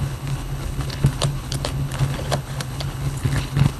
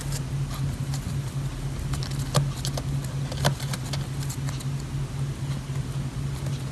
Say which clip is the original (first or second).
second